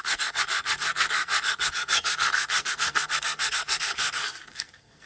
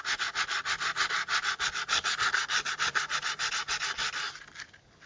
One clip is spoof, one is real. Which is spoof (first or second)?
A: first